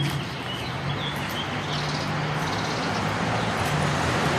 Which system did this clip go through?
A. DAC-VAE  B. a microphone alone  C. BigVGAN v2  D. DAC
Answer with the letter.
B